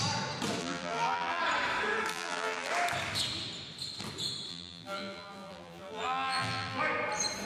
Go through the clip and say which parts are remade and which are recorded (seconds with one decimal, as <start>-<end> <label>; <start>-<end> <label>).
0.0-0.6 recorded; 0.6-1.4 remade; 1.4-2.1 recorded; 2.1-2.7 remade; 2.7-4.5 recorded; 4.5-6.8 remade; 6.8-7.5 recorded